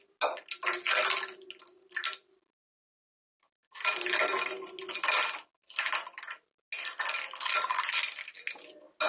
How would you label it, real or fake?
real